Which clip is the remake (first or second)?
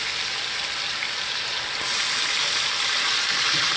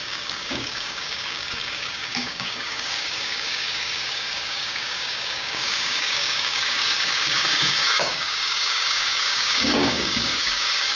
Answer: second